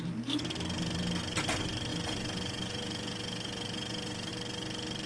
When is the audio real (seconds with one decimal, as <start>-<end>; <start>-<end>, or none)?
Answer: 0.0-1.9; 4.3-5.1

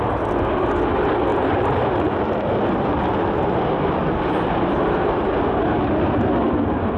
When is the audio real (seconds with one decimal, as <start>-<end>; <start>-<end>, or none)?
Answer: 0.0-1.3; 5.5-7.0

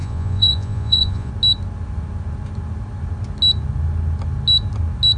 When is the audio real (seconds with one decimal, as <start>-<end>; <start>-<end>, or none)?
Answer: 1.3-5.2

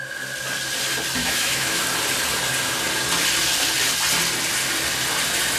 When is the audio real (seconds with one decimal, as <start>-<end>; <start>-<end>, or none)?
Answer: 0.0-1.2; 1.8-5.6

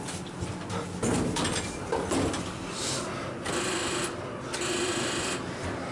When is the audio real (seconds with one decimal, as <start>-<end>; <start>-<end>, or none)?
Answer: 0.0-5.9